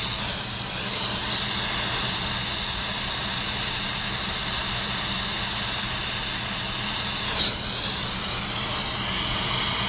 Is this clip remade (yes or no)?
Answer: no